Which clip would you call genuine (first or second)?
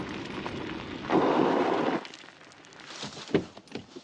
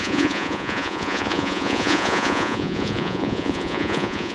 first